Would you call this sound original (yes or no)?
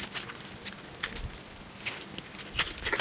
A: yes